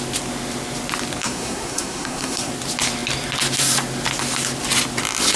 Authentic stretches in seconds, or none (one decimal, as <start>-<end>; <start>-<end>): 0.0-1.2; 2.5-5.4